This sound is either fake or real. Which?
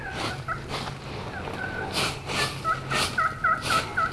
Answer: real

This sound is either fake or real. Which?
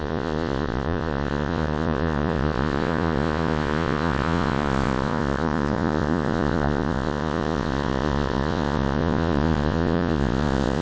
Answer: fake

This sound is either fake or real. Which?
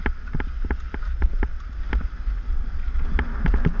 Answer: real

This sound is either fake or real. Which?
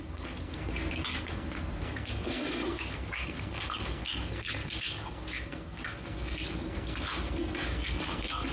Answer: fake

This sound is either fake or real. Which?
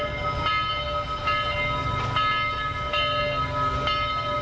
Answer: real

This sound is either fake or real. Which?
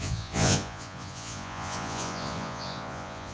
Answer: fake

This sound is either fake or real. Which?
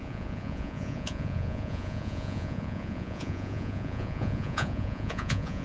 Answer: fake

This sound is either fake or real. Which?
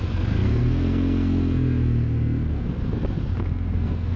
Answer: fake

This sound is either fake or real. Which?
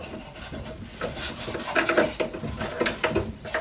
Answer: real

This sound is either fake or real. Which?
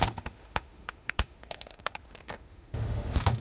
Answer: fake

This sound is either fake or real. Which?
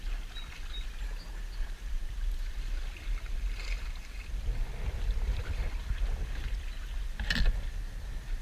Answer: real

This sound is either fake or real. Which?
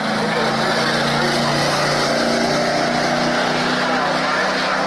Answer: real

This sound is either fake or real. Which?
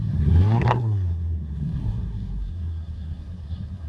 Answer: fake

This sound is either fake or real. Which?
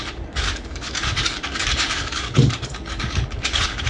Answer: fake